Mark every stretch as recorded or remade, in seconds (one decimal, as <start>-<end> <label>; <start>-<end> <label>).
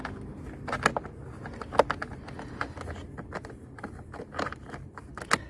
0.0-5.5 recorded